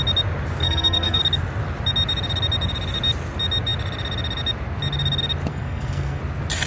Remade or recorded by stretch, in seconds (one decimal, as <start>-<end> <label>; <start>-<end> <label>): 0.0-0.6 recorded; 0.6-1.2 remade; 1.2-5.5 recorded; 5.5-6.2 remade; 6.2-6.7 recorded